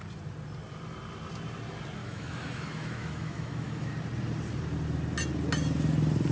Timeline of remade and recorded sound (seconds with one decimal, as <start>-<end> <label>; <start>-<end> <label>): 0.0-2.0 recorded; 2.0-3.9 remade; 3.9-6.3 recorded